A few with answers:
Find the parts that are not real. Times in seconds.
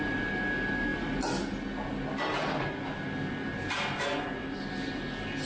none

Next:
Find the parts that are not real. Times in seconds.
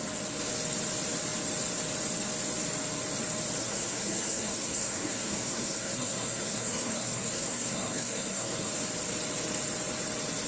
3.6-8.7 (codec, SNAC)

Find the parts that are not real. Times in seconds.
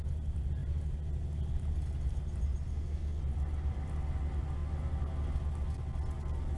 2.7-3.2 (codec, SNAC)